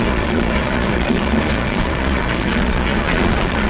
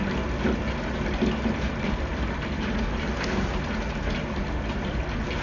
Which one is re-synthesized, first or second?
first